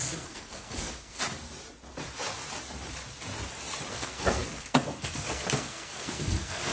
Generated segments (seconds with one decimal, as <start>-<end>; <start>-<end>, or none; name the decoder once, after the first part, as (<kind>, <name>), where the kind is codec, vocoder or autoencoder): 0.0-1.2 (codec, SNAC); 3.9-6.7